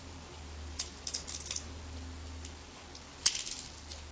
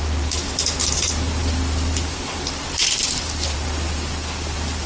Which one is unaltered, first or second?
first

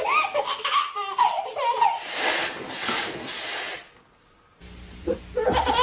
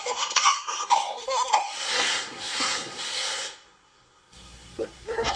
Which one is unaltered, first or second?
first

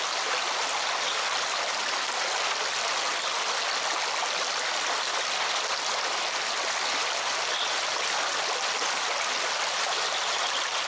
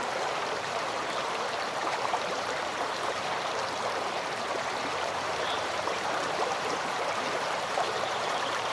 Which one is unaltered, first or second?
first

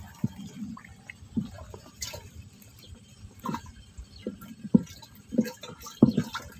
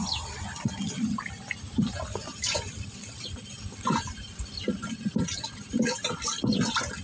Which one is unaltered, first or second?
first